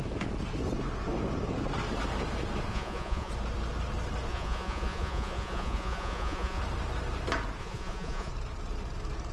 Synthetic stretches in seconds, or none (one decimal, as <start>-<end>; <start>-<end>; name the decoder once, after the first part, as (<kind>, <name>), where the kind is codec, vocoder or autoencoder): 2.7-3.3 (vocoder, Vocos); 4.3-6.6; 7.6-8.3